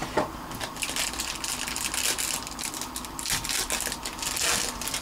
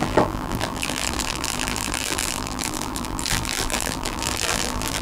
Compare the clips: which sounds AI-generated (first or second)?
second